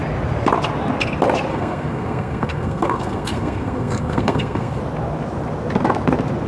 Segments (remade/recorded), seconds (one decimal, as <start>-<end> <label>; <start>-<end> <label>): 0.0-1.5 recorded; 1.5-4.8 remade; 4.8-6.5 recorded